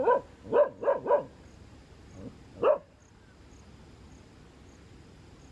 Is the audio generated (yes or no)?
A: no